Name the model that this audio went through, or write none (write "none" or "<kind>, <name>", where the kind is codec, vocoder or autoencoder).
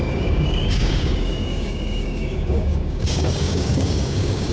codec, DAC